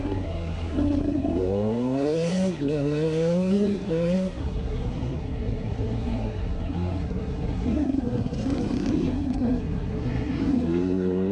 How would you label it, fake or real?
fake